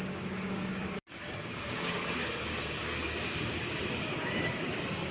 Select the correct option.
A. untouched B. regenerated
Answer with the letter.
B